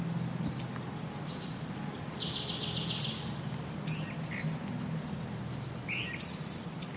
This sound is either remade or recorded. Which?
recorded